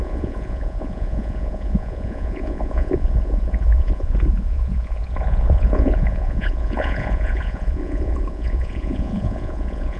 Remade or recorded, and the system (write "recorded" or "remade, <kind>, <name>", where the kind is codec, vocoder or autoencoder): remade, vocoder, Vocos